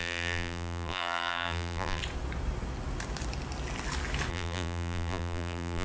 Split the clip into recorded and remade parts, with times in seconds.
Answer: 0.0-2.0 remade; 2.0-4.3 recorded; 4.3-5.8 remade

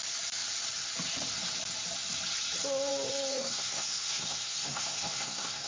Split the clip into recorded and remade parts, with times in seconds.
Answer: 0.0-3.3 recorded; 3.3-5.7 remade

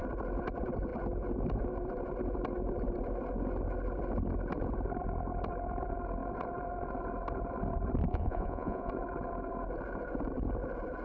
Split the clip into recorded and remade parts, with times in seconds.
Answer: 0.0-8.1 recorded; 8.1-8.9 remade; 8.9-11.0 recorded

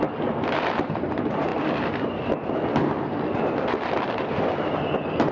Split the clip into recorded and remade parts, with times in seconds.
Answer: 0.0-5.3 recorded

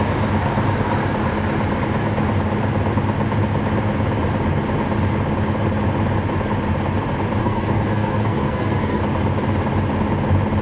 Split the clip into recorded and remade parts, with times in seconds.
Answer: 0.0-7.4 recorded; 7.4-9.0 remade; 9.0-10.6 recorded

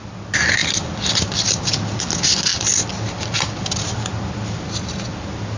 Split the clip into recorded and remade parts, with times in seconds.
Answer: 0.0-5.6 recorded